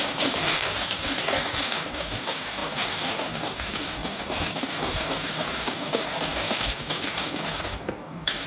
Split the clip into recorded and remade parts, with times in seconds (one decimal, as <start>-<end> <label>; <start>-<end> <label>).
0.0-8.5 remade